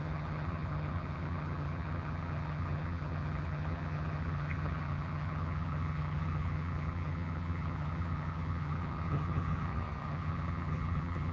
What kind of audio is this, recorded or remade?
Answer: remade